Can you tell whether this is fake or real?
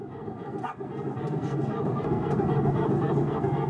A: fake